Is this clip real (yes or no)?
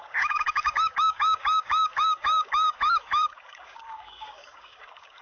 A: no